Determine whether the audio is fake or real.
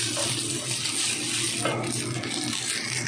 real